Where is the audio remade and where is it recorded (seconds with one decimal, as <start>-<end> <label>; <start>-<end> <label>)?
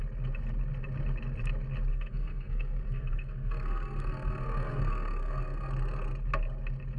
0.0-1.9 recorded; 1.9-5.7 remade; 5.7-7.0 recorded